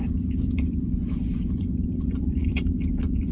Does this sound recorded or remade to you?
remade